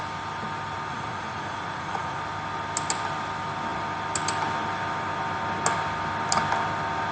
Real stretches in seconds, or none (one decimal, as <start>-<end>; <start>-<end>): 0.0-0.9; 2.2-7.1